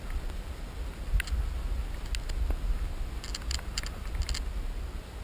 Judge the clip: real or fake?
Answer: real